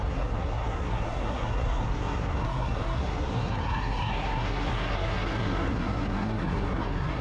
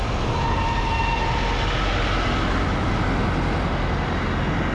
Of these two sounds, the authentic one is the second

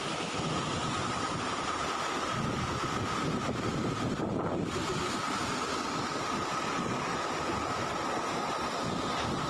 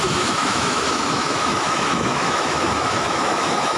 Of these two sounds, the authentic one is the first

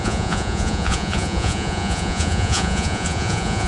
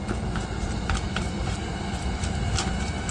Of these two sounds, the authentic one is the second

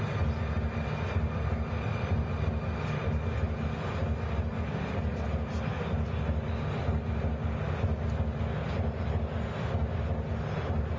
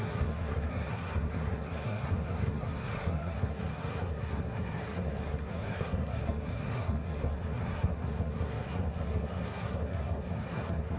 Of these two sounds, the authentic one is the first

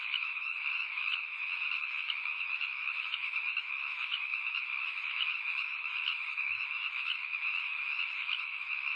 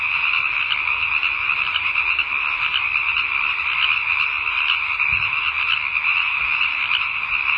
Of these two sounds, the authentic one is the second